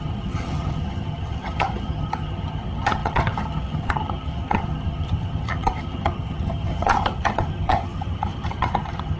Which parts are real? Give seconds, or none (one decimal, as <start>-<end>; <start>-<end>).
none